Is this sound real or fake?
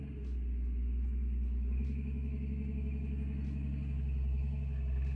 real